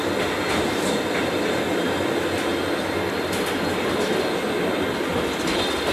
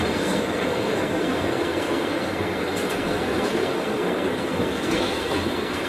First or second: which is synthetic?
second